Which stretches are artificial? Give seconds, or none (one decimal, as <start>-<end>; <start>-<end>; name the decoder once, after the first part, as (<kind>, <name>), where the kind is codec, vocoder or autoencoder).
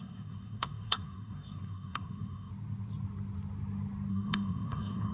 0.0-2.5 (codec, SNAC); 4.1-5.1